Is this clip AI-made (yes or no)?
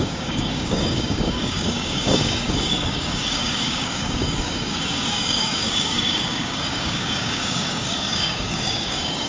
yes